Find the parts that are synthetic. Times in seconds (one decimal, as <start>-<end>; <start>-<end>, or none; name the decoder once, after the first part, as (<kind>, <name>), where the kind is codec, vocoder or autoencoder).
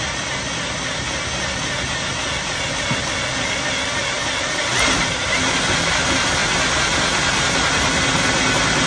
none